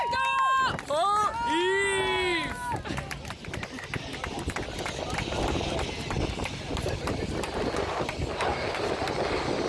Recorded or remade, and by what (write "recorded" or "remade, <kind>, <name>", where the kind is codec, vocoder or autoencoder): recorded